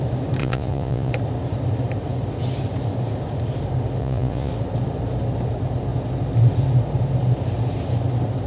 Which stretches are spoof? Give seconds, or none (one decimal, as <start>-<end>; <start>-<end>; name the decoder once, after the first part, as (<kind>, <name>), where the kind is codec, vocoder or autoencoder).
0.4-1.1 (vocoder, Vocos); 4.0-4.5